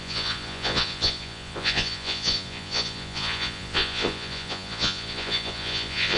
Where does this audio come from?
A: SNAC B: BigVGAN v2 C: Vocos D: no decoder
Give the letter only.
C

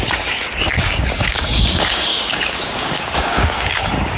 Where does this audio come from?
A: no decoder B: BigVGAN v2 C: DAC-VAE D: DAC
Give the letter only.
D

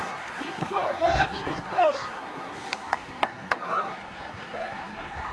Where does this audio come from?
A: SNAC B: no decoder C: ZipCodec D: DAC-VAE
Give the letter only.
A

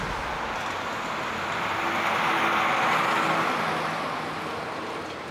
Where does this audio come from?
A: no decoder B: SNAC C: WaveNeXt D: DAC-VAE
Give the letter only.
A